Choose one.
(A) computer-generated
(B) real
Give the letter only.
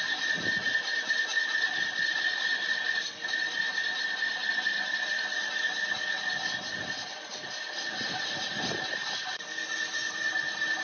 B